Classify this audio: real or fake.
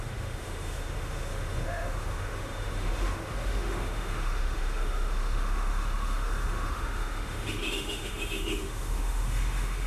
fake